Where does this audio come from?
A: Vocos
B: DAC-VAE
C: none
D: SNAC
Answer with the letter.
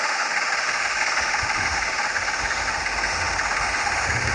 B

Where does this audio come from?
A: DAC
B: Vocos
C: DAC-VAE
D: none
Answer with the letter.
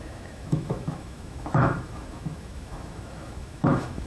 C